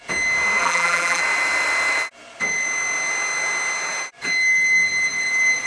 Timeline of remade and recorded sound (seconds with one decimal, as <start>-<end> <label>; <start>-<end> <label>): 0.0-0.6 recorded; 0.6-1.2 remade; 1.2-5.7 recorded